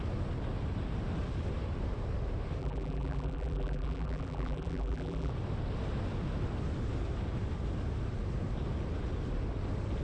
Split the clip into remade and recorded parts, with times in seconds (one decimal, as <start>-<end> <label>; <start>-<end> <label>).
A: 0.0-2.6 recorded; 2.6-5.3 remade; 5.3-10.0 recorded